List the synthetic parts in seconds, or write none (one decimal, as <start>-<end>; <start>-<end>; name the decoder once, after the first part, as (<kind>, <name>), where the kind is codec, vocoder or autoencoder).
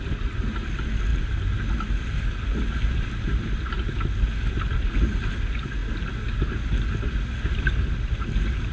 none